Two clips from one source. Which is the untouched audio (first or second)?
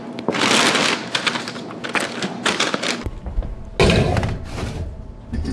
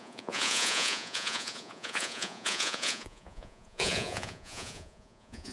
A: first